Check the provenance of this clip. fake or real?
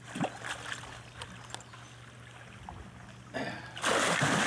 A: real